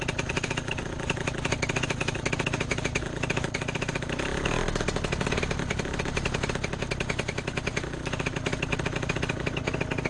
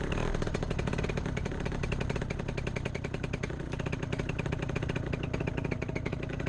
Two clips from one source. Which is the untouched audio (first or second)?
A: first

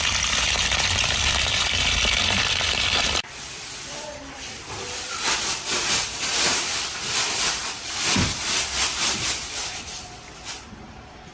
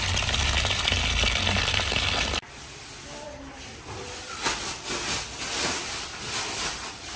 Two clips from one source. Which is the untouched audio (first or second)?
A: second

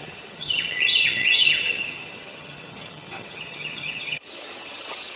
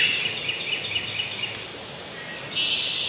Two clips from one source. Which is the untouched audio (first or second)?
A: second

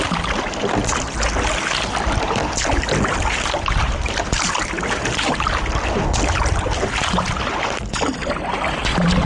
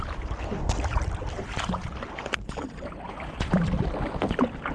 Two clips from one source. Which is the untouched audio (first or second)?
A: first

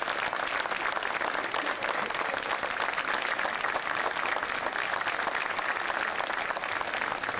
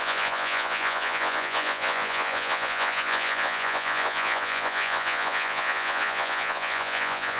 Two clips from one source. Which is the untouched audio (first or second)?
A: first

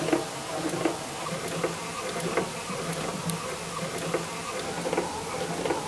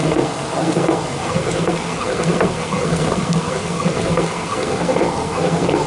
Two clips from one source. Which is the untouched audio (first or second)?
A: first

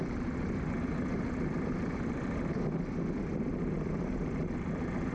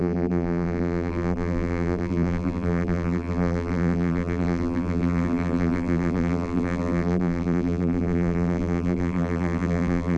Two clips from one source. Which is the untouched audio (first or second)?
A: first